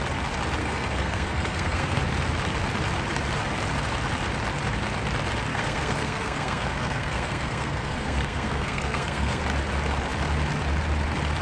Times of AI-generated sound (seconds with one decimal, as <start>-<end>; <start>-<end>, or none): 0.6-2.0; 5.5-9.4